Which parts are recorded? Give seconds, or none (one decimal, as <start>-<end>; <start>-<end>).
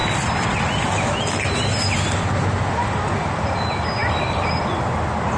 0.0-4.0; 4.6-5.4